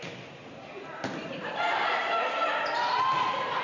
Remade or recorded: recorded